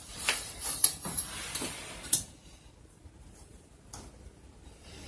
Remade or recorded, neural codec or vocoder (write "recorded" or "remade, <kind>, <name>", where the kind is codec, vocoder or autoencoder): recorded